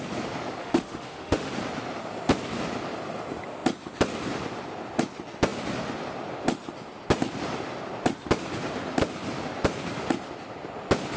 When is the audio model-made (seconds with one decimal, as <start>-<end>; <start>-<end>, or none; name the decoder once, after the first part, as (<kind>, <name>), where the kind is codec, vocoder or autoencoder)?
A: 0.6-1.5 (autoencoder, DAC-VAE)